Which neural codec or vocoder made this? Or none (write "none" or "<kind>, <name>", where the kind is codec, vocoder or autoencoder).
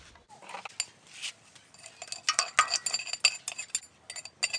none